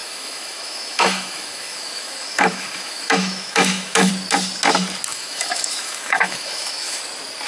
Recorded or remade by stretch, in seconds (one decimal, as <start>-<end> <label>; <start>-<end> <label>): 0.0-4.1 remade; 4.1-5.1 recorded; 5.1-7.0 remade; 7.0-7.5 recorded